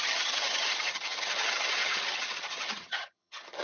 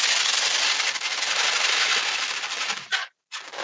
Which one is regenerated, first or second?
first